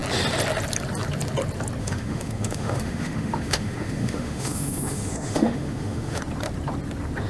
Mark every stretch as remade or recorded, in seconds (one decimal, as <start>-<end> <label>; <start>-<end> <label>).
0.0-1.8 recorded; 1.8-6.2 remade; 6.2-7.3 recorded